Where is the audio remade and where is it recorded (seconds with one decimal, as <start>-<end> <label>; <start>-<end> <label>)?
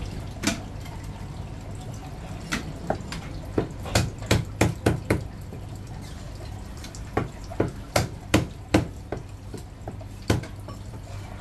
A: 0.0-11.4 recorded